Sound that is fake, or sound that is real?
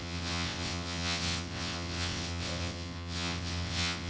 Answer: fake